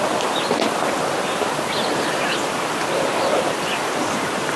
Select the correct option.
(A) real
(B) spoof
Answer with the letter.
A